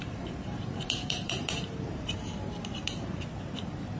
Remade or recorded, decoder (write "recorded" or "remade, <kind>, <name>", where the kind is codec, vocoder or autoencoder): remade, vocoder, BigVGAN v2